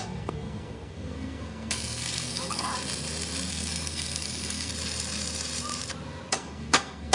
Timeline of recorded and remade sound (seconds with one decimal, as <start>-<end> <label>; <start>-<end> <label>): 0.0-2.7 remade; 2.7-3.5 recorded; 3.5-4.7 remade; 4.7-6.3 recorded; 6.3-7.1 remade